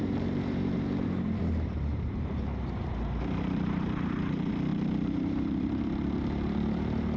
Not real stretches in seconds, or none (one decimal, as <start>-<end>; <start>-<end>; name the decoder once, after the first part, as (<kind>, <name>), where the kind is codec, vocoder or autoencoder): 0.0-7.2 (vocoder, BigVGAN v2)